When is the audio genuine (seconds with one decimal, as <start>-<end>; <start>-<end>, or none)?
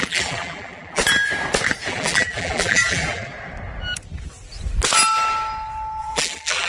1.0-1.9; 3.3-6.0